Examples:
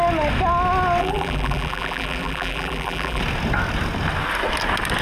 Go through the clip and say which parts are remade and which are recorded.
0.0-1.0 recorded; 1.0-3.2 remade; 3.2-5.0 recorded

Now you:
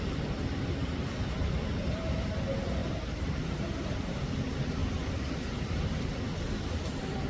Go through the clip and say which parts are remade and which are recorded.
0.0-1.8 recorded; 1.8-2.3 remade; 2.3-2.8 recorded; 2.8-4.2 remade; 4.2-4.8 recorded; 4.8-6.0 remade; 6.0-7.3 recorded

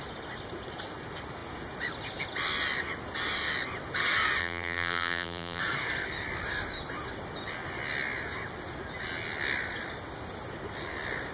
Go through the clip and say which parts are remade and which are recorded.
0.0-4.4 recorded; 4.4-5.6 remade; 5.6-11.3 recorded

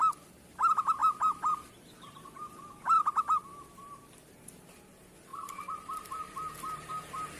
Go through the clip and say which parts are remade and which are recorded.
0.0-1.0 recorded; 1.0-3.0 remade; 3.0-3.5 recorded; 3.5-4.4 remade; 4.4-5.3 recorded; 5.3-6.9 remade; 6.9-7.4 recorded